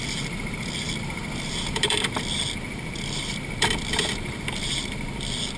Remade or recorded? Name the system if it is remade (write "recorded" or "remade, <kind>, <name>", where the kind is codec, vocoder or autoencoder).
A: remade, vocoder, BigVGAN v2